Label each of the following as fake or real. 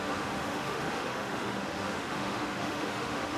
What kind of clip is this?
fake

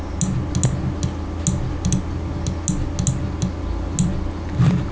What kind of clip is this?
real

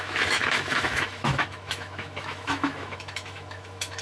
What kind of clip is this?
fake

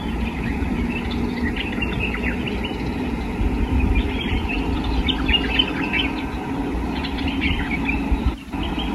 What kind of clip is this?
real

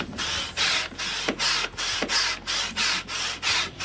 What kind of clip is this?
real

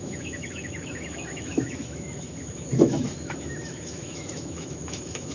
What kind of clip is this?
fake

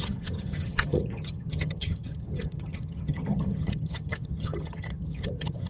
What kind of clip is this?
fake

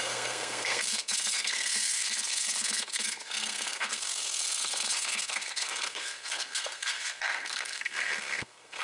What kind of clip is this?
fake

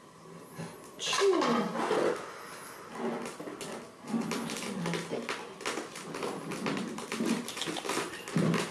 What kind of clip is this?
real